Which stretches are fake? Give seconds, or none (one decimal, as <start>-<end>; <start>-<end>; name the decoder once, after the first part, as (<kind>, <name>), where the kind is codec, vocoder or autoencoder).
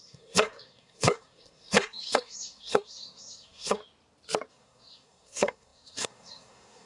0.0-3.8 (codec, SNAC); 4.5-6.9